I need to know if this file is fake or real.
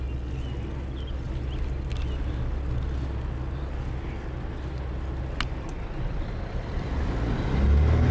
real